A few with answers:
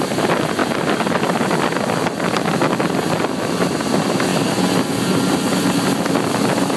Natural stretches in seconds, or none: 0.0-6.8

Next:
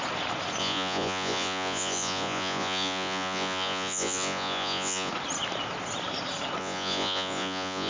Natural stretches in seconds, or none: 0.0-0.6; 5.1-6.6

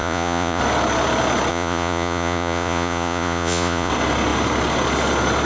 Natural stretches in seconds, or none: 0.6-1.5; 3.9-5.5

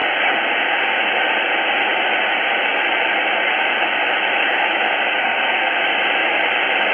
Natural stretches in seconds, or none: 0.0-5.2; 5.8-6.9

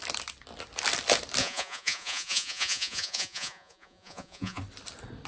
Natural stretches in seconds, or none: 0.0-1.4; 4.6-5.3

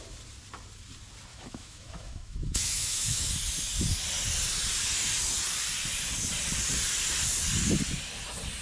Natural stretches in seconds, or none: 0.0-1.3; 3.3-8.6

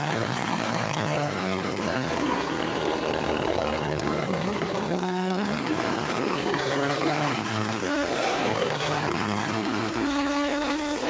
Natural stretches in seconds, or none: none